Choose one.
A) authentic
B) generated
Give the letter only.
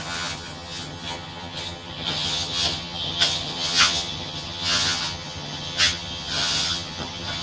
B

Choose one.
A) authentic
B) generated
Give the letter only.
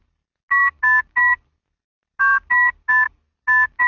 A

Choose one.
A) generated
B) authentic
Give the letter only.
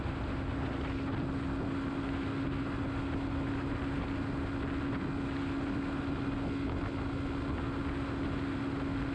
B